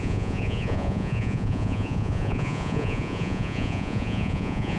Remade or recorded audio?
remade